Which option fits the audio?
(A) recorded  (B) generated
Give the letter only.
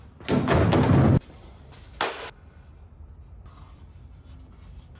A